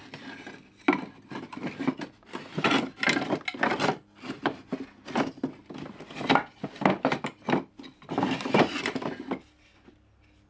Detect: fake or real real